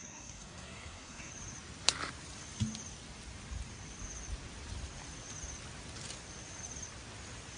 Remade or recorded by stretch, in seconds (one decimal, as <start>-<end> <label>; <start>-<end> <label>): 0.0-1.3 remade; 1.3-7.6 recorded